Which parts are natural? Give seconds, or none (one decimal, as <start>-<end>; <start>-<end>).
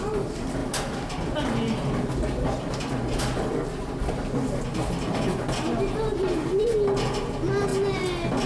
0.0-8.5